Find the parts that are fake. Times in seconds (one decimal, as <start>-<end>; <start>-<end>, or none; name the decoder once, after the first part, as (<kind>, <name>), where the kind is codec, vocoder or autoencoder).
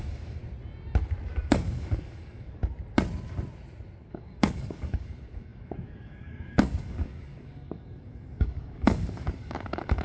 0.0-0.4 (codec, DAC); 1.4-2.6; 4.1-10.0